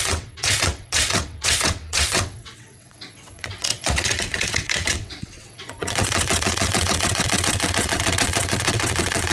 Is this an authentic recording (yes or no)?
no